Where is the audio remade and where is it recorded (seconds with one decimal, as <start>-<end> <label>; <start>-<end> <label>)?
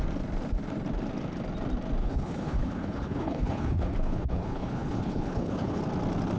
0.0-2.0 recorded; 2.0-5.8 remade; 5.8-6.4 recorded